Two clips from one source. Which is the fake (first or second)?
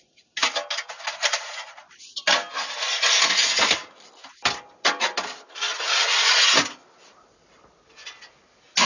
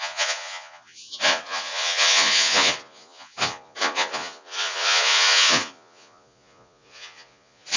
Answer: second